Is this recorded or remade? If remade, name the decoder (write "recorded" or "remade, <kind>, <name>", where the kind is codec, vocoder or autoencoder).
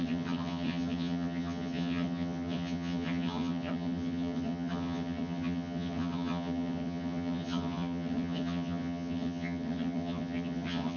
remade, vocoder, HiFi-GAN